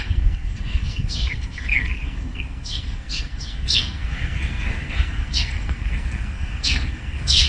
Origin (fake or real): fake